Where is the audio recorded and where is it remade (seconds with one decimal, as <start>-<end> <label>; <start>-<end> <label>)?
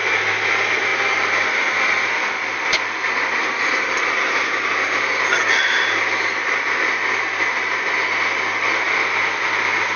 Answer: 0.0-10.0 recorded